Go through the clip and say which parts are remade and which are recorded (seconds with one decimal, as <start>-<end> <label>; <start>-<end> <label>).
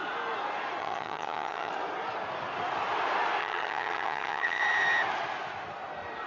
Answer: 0.0-0.8 recorded; 0.8-1.7 remade; 1.7-3.4 recorded; 3.4-4.6 remade; 4.6-6.3 recorded